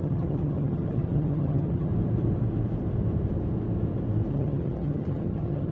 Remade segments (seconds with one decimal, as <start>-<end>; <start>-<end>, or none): 0.0-1.9; 4.3-5.7